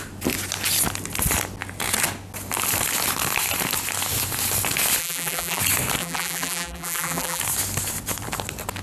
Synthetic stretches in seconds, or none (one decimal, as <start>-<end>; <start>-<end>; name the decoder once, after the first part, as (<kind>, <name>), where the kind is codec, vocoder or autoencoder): 5.0-5.6 (vocoder, BigVGAN v2); 6.0-7.4

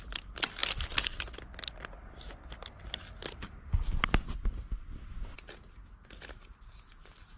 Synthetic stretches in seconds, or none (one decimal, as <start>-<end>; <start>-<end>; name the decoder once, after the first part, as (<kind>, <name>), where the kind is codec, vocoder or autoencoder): none